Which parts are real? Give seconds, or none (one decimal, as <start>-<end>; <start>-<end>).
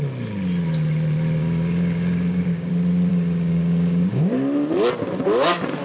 0.0-1.4; 2.7-3.1; 4.2-5.8